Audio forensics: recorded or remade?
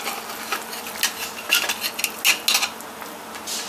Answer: recorded